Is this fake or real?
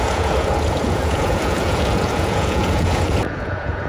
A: fake